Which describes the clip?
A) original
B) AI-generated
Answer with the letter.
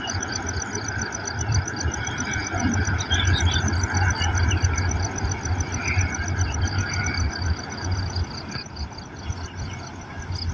A